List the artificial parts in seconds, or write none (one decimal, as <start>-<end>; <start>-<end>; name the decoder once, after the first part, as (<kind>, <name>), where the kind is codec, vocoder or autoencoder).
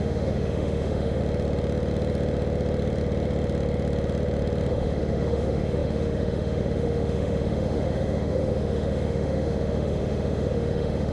0.0-1.2 (autoencoder, DAC-VAE); 4.7-11.1